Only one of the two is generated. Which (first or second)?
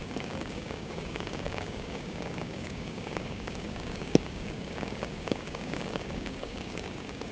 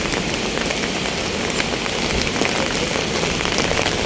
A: first